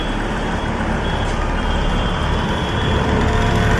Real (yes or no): no